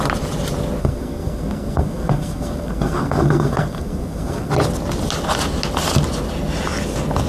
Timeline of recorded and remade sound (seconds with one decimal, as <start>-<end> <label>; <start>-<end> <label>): 0.0-0.8 recorded; 0.8-4.5 remade; 4.5-7.3 recorded